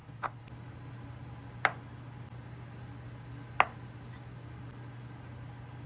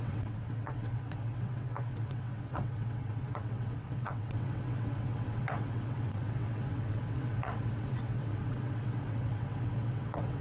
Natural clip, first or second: first